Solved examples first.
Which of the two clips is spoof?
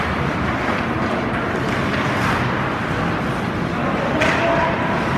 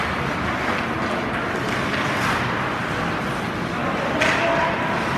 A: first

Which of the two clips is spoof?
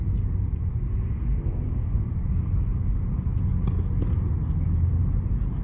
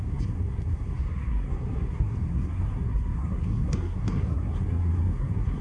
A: second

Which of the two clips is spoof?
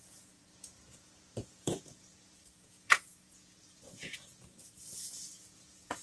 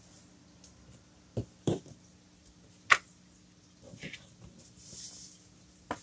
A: first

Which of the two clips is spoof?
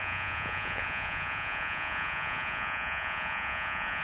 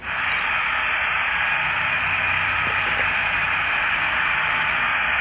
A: first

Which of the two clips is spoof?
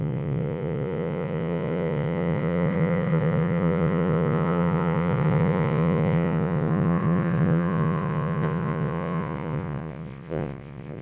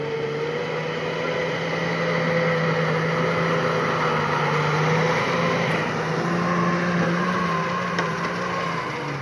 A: first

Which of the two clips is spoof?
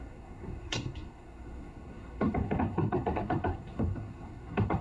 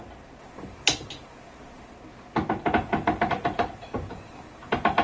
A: first